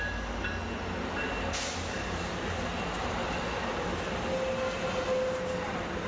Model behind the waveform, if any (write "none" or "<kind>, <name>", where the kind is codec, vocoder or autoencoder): none